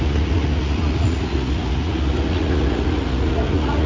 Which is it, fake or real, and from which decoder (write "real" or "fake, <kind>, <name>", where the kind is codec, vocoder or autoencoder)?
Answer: fake, vocoder, Vocos